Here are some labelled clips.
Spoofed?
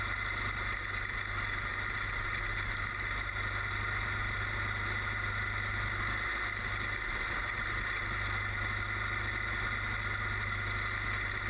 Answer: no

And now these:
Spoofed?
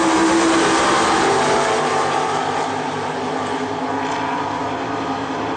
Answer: yes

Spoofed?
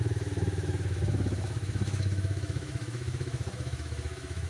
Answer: yes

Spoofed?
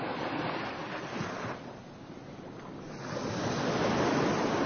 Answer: no